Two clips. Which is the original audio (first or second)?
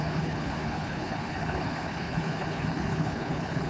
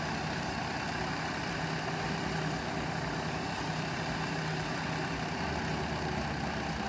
second